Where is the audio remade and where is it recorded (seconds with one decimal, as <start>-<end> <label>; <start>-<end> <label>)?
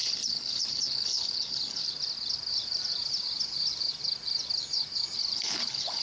0.0-1.8 remade; 1.8-5.2 recorded; 5.2-6.0 remade